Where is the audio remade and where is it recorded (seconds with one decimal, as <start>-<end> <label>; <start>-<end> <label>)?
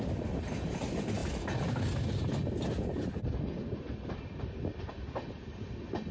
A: 0.0-6.1 recorded